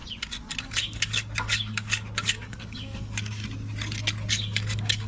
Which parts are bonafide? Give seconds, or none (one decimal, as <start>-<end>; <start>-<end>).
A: 0.0-0.6; 3.4-4.3